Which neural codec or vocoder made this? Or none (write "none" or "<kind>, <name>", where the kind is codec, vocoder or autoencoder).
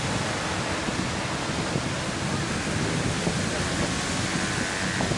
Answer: none